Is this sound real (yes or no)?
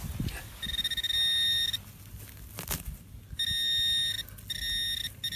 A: yes